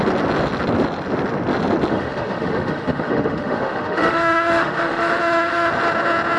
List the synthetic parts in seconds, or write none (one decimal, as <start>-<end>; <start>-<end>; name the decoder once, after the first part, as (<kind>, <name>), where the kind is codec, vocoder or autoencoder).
1.9-5.7 (autoencoder, DAC-VAE)